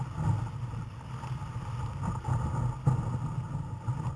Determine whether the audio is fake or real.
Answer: real